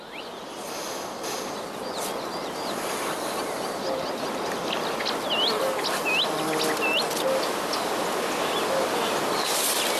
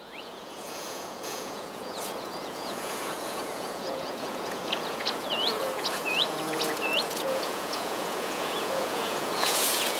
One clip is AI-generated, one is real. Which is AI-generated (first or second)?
second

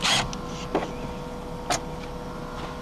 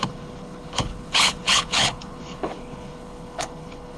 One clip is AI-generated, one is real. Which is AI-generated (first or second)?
second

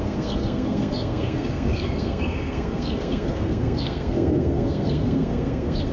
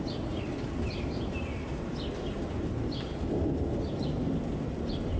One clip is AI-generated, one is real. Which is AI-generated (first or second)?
first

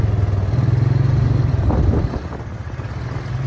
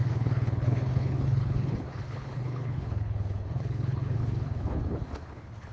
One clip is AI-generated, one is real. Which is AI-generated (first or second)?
second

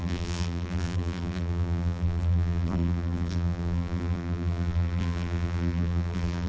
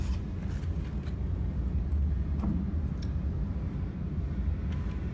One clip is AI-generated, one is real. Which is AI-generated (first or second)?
first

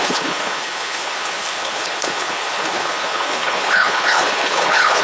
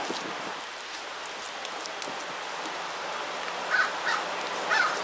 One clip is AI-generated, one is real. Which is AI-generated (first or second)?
first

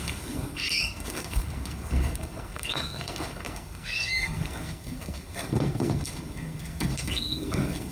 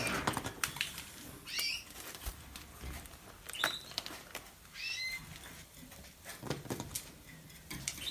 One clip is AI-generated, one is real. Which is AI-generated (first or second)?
first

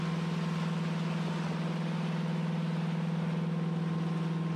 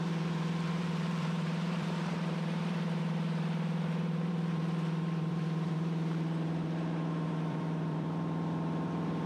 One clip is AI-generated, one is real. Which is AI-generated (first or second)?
second